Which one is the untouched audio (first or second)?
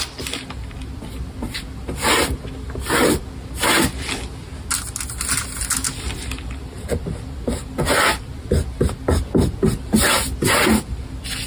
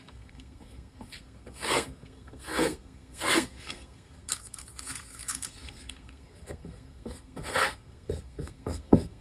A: first